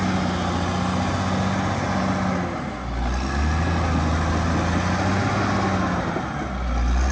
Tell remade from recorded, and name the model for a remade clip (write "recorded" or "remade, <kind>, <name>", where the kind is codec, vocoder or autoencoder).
recorded